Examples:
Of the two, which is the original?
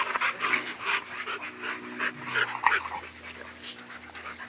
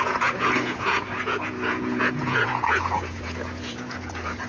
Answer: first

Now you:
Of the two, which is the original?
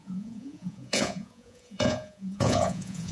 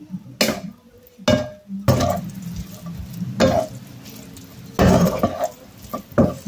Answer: second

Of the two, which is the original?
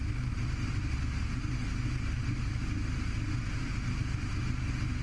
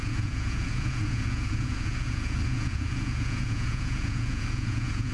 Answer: first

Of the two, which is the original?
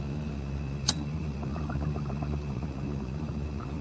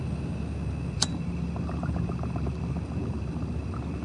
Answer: second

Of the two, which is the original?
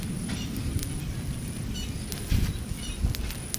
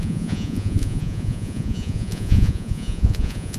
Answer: first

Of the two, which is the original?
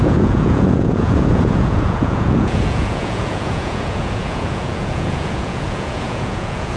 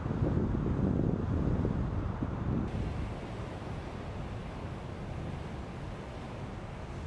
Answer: second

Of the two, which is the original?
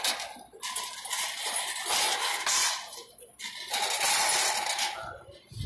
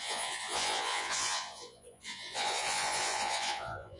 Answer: first